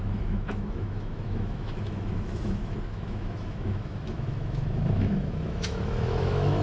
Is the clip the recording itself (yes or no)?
no